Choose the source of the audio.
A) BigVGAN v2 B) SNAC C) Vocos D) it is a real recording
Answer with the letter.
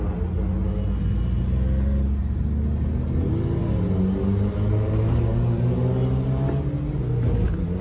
D